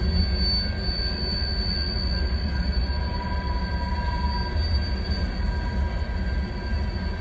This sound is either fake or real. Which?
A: real